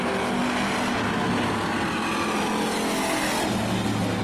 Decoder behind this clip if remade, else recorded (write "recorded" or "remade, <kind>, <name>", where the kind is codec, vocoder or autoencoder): recorded